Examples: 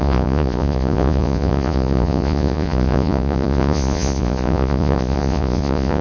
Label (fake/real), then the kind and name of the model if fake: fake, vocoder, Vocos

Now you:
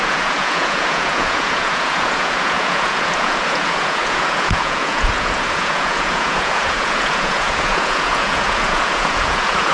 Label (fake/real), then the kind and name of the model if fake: fake, vocoder, Vocos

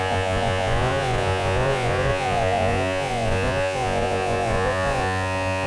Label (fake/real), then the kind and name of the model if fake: fake, vocoder, Vocos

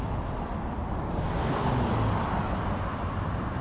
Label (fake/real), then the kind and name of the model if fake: real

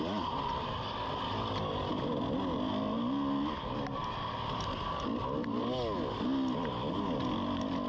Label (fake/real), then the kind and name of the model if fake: real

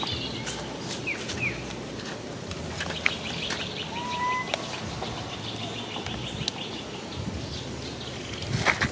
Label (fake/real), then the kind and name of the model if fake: real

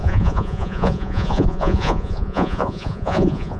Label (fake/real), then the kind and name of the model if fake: fake, vocoder, Vocos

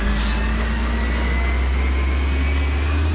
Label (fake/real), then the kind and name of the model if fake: real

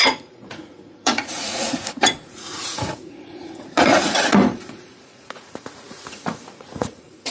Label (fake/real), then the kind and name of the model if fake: fake, vocoder, Vocos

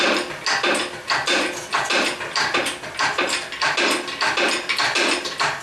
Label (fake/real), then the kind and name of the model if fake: real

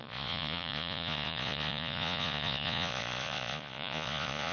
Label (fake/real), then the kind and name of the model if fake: fake, vocoder, Vocos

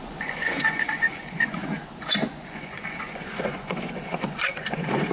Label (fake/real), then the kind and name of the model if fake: fake, vocoder, Vocos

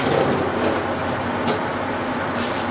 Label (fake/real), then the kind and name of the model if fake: real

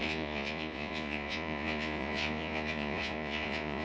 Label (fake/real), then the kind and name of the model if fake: fake, vocoder, Vocos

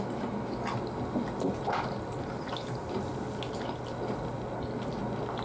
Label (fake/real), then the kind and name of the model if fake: real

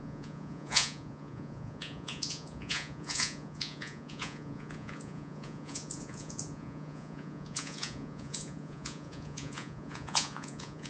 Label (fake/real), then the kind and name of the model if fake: fake, vocoder, Vocos